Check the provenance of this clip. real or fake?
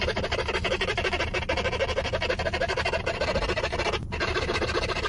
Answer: real